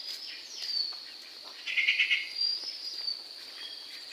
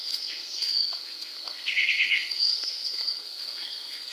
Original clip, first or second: first